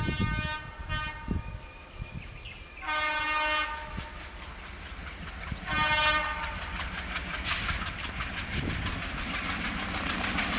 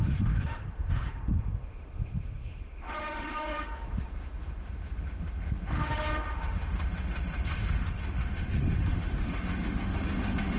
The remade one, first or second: second